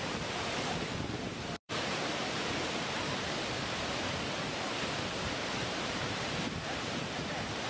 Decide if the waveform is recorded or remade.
remade